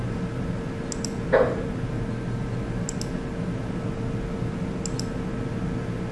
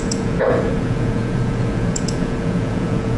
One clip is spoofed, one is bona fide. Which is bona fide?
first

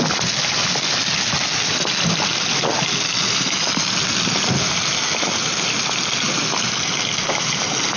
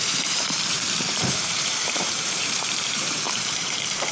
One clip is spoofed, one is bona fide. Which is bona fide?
first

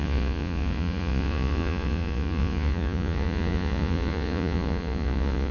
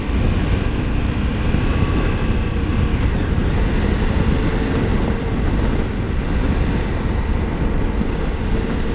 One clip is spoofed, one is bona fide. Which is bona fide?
second